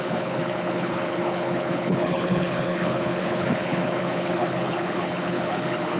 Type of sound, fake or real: fake